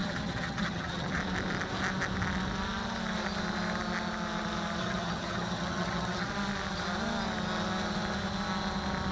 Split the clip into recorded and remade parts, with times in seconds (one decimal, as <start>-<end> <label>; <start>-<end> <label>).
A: 0.0-1.2 remade; 1.2-4.8 recorded; 4.8-6.3 remade; 6.3-9.1 recorded